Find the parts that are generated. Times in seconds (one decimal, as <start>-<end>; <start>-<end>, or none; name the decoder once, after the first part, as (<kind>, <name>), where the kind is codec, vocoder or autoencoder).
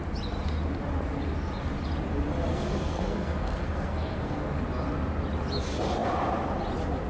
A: 2.5-4.6 (codec, SNAC)